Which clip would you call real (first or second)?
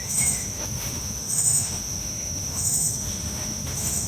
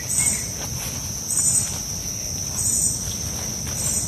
second